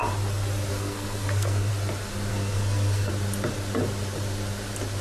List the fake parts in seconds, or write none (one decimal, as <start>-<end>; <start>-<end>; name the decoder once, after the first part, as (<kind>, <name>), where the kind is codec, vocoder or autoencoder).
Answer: 0.7-1.7 (codec, SNAC); 2.3-3.1